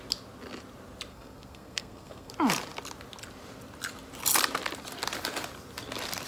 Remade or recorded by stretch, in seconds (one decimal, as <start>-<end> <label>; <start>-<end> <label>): 0.0-1.1 recorded; 1.1-2.3 remade; 2.3-6.3 recorded